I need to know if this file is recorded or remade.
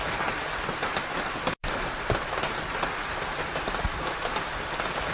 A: recorded